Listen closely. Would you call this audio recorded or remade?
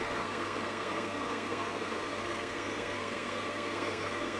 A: remade